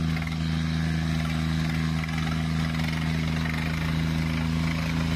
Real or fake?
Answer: real